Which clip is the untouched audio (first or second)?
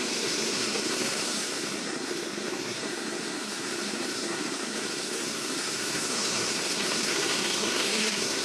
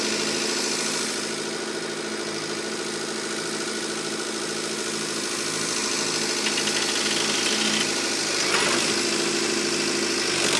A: second